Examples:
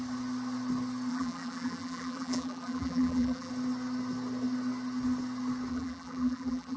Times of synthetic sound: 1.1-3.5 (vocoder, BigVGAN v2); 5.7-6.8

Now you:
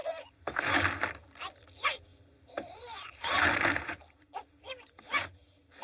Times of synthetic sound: 0.0-0.8 (vocoder, BigVGAN v2); 2.1-5.8

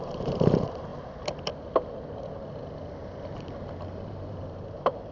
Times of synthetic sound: 0.0-0.9 (vocoder, BigVGAN v2); 3.3-5.1

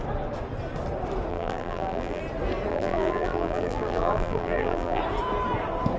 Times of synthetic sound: 1.3-2.2 (vocoder, BigVGAN v2); 2.7-5.0

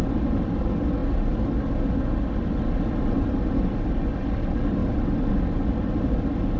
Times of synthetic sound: none

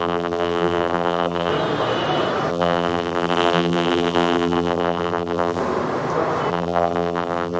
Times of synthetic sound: 0.0-1.5 (vocoder, BigVGAN v2); 2.5-5.6; 6.5-7.6

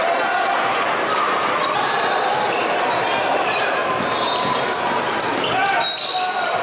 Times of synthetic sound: 0.0-2.6 (vocoder, BigVGAN v2); 3.2-5.3; 6.0-6.6

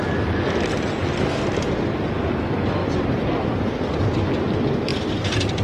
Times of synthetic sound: 2.8-3.7 (vocoder, BigVGAN v2)